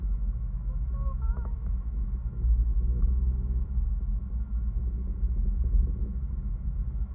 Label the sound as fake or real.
fake